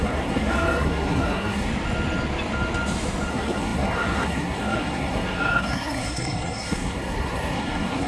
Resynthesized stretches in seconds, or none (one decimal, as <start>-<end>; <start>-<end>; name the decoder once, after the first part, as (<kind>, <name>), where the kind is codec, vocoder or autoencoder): 0.0-1.7 (codec, SNAC); 3.3-8.1